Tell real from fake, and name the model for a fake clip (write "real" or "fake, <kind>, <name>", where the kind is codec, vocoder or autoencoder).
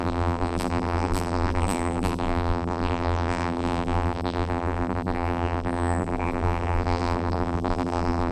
fake, vocoder, BigVGAN v2